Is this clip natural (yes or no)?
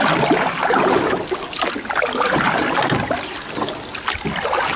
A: yes